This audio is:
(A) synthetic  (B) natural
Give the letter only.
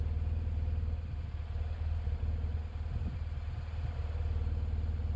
B